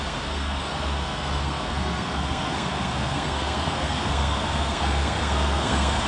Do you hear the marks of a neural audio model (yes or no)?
yes